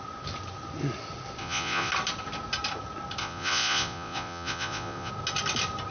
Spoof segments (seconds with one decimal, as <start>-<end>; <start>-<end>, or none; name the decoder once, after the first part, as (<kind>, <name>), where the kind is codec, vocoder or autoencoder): 1.4-1.9 (vocoder, Vocos); 3.2-5.1